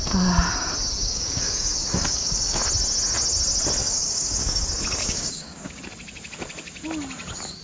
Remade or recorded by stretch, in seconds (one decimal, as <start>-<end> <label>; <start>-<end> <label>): 0.0-1.0 recorded; 1.0-2.6 remade; 2.6-3.8 recorded; 3.8-4.6 remade; 4.6-5.0 recorded; 5.0-5.8 remade; 5.8-7.6 recorded